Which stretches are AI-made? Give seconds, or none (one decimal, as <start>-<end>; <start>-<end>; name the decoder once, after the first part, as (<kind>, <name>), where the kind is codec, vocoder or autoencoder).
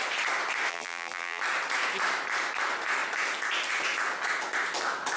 0.7-1.4 (vocoder, BigVGAN v2)